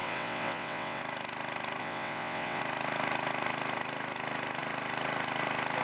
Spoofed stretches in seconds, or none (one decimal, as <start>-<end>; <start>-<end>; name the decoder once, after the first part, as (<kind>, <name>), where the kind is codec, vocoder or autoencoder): 0.0-1.0 (vocoder, WaveNeXt); 1.8-2.6

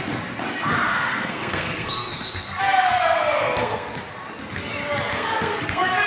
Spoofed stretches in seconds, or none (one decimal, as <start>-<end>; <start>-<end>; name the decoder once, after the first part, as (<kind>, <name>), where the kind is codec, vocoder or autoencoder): 0.9-4.0 (codec, SNAC); 5.1-6.1

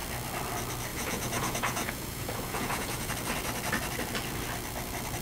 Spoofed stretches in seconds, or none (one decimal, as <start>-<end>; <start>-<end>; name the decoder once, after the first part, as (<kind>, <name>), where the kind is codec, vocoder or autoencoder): 0.9-3.1 (vocoder, Vocos)

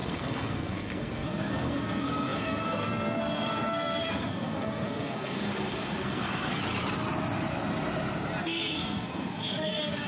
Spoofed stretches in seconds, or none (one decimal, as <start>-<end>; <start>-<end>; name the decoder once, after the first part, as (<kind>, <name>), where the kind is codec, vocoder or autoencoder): 0.0-6.6 (codec, SNAC); 8.4-10.1

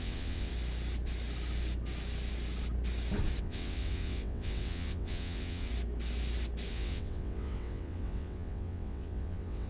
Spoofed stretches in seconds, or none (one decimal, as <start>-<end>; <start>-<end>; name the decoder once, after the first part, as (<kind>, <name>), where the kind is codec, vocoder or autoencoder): 0.0-0.5 (vocoder, WaveNeXt); 3.4-5.7; 6.7-9.7

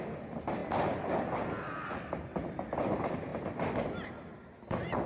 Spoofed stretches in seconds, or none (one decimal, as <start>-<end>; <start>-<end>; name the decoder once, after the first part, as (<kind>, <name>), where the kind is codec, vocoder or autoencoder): none